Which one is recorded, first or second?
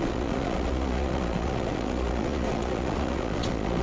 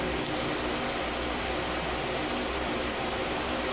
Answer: second